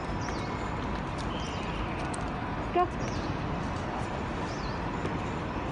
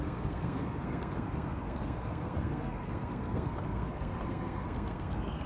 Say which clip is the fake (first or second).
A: second